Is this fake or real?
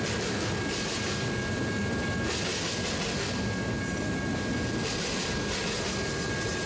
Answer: real